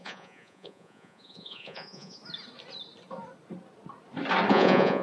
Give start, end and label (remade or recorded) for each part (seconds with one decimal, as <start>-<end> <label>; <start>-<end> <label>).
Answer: 0.0-2.2 remade; 2.2-4.5 recorded; 4.5-5.0 remade